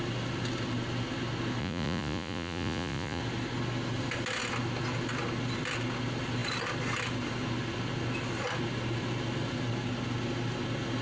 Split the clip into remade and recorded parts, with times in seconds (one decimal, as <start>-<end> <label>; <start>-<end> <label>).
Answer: 0.0-1.6 recorded; 1.6-3.2 remade; 3.2-11.0 recorded

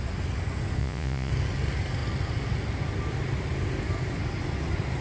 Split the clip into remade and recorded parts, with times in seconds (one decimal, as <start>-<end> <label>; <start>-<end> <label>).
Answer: 0.0-0.8 recorded; 0.8-1.3 remade; 1.3-5.0 recorded

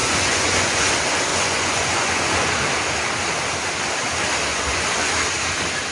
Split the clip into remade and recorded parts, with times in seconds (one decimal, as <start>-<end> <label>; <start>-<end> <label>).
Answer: 0.0-0.9 remade; 0.9-1.3 recorded; 1.3-2.5 remade; 2.5-4.5 recorded; 4.5-5.1 remade; 5.1-5.9 recorded